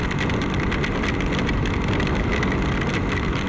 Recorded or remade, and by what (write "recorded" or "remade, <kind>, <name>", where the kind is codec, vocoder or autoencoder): recorded